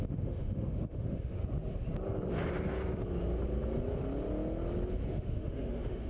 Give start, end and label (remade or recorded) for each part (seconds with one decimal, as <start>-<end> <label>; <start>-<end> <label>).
0.0-1.4 remade; 1.4-5.1 recorded; 5.1-6.1 remade